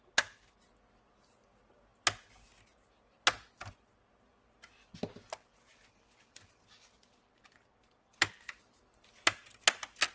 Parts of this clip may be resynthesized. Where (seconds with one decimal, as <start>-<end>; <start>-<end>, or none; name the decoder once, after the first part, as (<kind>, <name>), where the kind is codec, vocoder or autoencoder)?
none